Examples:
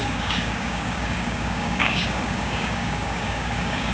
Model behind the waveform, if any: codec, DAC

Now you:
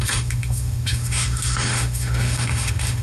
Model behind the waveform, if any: autoencoder, DAC-VAE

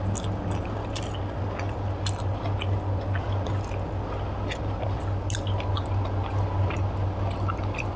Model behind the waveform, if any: none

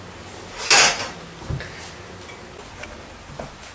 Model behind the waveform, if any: none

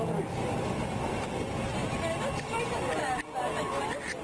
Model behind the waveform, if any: none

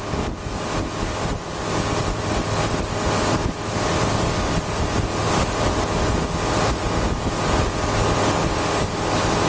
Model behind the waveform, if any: none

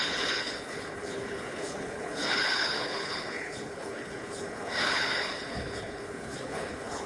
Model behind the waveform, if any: codec, HILCodec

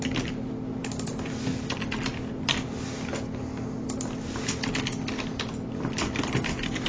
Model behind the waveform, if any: none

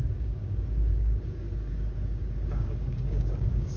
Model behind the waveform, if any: codec, DAC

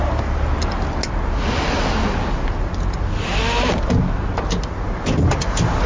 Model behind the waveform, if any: none